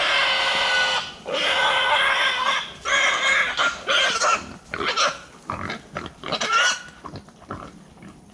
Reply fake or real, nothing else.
real